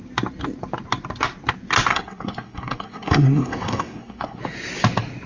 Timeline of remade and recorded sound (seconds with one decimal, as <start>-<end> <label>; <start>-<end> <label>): 0.0-1.9 recorded; 1.9-4.4 remade; 4.4-5.3 recorded